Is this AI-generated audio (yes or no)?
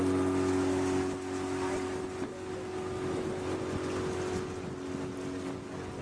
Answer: no